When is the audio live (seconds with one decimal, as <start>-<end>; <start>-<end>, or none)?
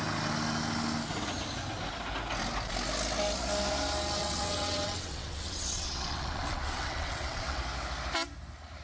0.0-4.2; 7.6-8.8